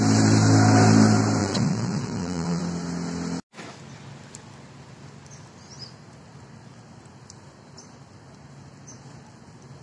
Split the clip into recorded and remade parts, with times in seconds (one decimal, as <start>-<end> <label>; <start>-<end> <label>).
0.0-1.4 recorded; 1.4-2.6 remade; 2.6-9.8 recorded